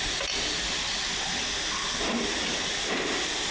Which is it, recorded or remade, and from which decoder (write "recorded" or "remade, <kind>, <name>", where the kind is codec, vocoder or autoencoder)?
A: recorded